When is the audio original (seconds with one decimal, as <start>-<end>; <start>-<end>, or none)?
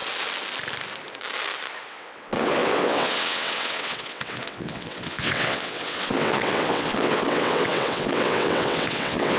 0.0-1.9